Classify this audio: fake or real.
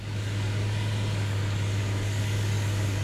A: fake